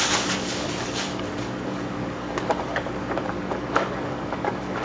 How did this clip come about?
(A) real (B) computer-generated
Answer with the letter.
B